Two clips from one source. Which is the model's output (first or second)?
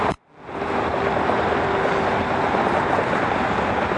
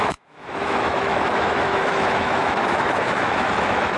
second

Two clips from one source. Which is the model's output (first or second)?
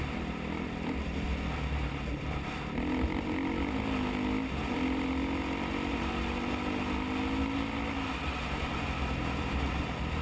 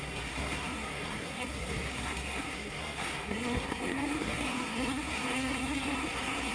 second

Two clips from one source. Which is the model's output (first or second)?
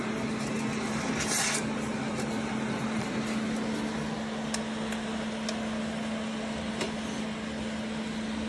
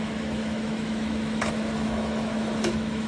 second